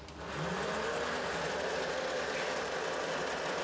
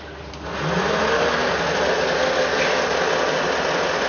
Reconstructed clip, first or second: first